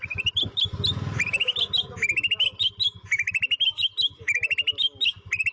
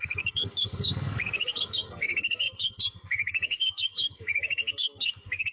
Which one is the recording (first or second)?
first